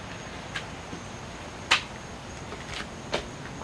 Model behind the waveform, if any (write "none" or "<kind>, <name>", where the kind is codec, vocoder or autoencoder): none